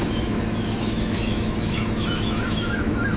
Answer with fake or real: fake